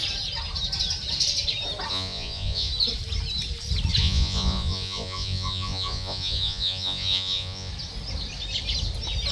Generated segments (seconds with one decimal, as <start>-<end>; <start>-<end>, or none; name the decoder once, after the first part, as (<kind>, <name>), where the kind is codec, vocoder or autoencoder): 1.9-2.7 (vocoder, Vocos); 4.0-7.7